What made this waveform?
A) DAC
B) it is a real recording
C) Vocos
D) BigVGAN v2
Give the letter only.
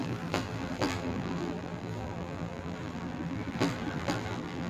D